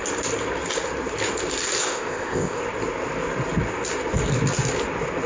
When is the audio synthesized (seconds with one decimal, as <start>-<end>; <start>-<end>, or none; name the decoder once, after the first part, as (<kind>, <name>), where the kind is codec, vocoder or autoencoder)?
1.8-2.6 (codec, ZipCodec)